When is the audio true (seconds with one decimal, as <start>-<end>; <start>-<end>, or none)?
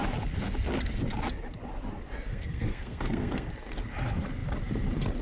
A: 0.0-2.3; 3.5-5.2